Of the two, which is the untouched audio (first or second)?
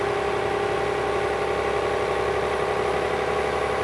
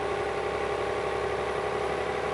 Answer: first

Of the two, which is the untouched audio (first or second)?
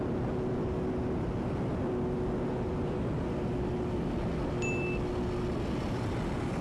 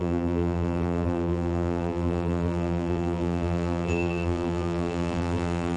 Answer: first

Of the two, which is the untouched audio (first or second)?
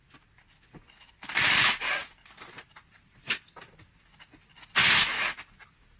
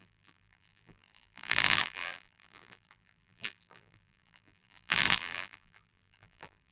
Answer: first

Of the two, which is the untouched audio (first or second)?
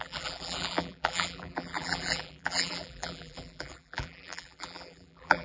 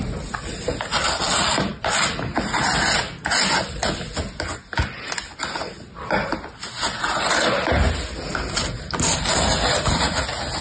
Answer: second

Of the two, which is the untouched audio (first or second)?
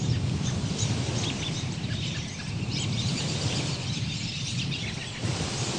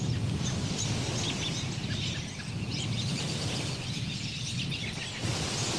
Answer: second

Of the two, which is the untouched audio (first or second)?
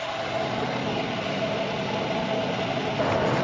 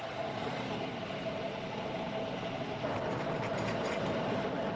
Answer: first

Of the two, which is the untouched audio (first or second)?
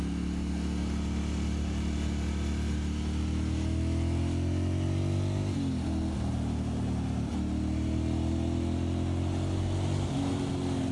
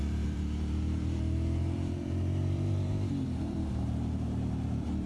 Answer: first